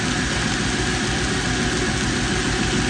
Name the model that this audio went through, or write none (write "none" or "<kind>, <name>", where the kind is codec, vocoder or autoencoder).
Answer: none